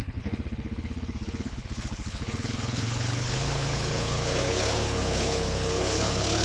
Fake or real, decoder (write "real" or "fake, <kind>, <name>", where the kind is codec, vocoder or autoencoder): fake, codec, HILCodec